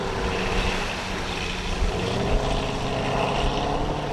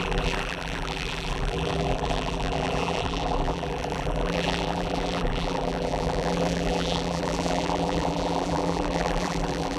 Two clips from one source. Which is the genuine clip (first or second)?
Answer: first